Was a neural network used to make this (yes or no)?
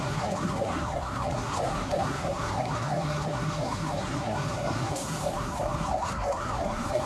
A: yes